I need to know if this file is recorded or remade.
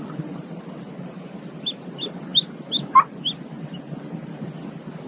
recorded